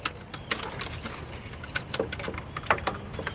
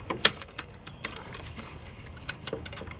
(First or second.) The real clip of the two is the first